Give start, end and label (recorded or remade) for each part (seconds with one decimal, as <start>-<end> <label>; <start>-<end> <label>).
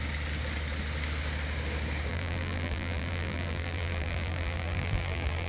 0.0-2.1 recorded; 2.1-5.5 remade